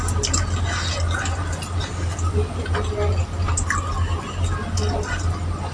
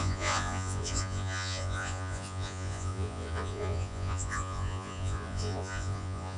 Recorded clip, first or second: first